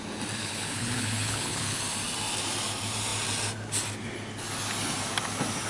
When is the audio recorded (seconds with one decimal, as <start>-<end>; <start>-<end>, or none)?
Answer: 0.0-0.4; 1.8-5.7